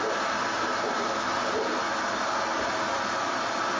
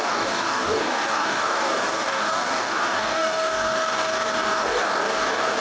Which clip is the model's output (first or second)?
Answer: second